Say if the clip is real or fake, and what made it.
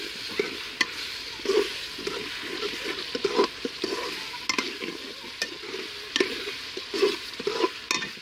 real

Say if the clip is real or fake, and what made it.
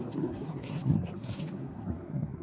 fake, codec, SNAC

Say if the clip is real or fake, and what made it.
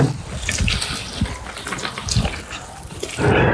real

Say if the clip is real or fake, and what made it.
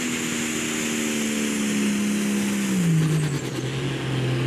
real